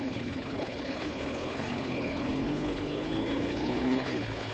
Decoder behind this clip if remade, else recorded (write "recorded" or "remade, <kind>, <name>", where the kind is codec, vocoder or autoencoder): remade, codec, HILCodec